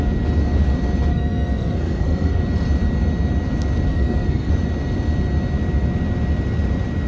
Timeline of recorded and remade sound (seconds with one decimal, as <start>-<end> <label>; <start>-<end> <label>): 0.0-1.1 recorded; 1.1-2.4 remade; 2.4-3.9 recorded; 3.9-4.5 remade; 4.5-7.1 recorded